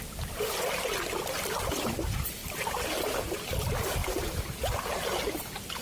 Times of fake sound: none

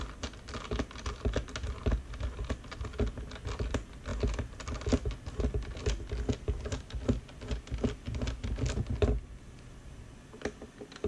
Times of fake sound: none

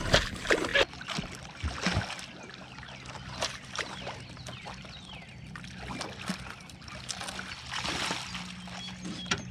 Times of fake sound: none

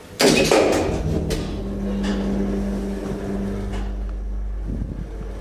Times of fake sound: none

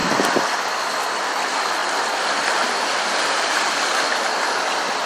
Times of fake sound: none